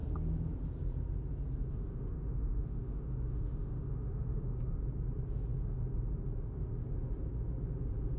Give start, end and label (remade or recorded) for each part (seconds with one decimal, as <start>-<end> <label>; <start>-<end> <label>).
0.0-1.7 recorded; 1.7-4.8 remade; 4.8-8.2 recorded